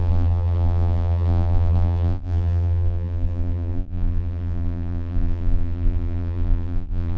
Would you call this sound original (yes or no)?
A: no